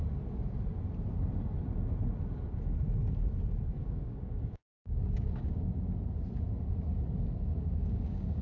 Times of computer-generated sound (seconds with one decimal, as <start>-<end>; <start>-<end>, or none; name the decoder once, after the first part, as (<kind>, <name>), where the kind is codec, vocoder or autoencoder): 3.8-5.7 (codec, DAC); 7.5-8.4